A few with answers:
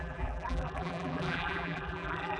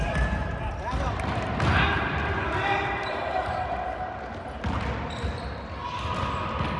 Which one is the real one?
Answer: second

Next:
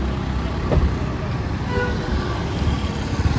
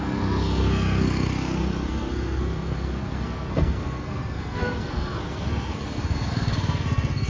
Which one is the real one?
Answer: first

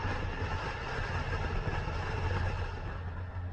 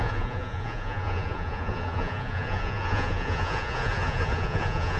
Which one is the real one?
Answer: first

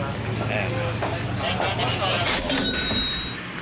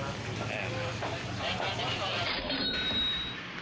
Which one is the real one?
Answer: first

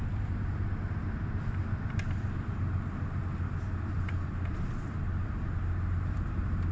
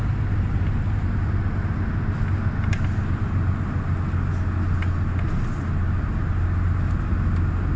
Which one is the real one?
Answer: second